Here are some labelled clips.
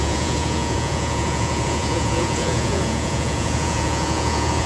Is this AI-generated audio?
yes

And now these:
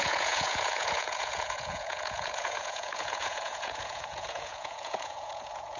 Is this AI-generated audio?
yes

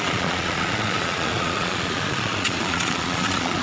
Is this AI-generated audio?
yes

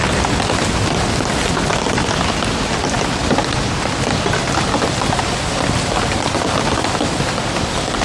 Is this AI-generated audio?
no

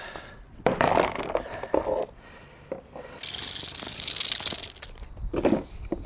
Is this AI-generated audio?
no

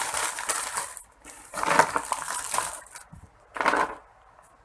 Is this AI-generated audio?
no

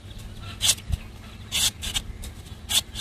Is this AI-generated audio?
no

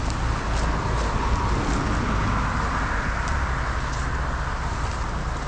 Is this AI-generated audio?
no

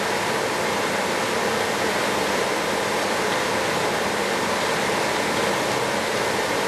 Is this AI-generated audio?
no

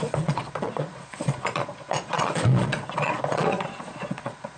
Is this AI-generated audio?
yes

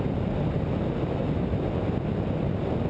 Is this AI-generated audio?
no